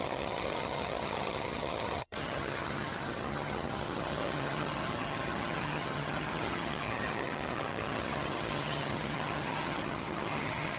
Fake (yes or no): yes